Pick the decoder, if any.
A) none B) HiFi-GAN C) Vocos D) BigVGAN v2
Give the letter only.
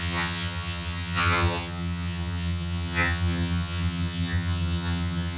B